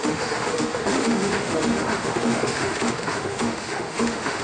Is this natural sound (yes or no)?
no